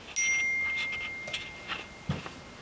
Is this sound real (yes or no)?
yes